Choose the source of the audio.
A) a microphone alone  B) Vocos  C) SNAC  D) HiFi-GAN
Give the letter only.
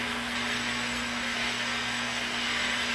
C